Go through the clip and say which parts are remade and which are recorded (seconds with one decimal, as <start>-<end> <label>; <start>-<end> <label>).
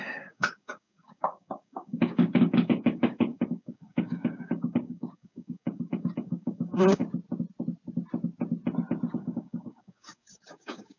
0.0-7.0 remade; 7.0-9.2 recorded; 9.2-11.0 remade